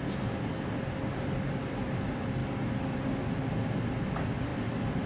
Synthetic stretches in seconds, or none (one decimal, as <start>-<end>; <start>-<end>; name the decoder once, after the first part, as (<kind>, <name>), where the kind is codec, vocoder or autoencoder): none

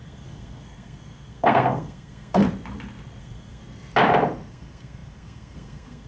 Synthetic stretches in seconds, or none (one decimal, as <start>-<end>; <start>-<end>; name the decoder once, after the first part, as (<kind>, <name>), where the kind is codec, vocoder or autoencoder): 0.0-2.4 (codec, SNAC); 3.2-3.6; 4.5-6.1

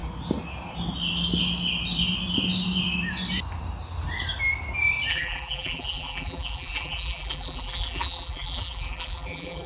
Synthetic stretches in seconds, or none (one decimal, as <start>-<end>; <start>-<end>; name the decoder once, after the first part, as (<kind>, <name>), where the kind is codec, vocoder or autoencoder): 5.1-9.7 (vocoder, BigVGAN v2)

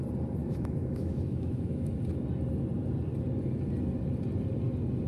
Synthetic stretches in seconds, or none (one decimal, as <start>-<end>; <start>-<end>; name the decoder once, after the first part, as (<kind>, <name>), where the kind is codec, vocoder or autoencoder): 0.4-1.9 (autoencoder, DAC-VAE)

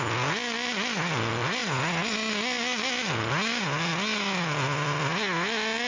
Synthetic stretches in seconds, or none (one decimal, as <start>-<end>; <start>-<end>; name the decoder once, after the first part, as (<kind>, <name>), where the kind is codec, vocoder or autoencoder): none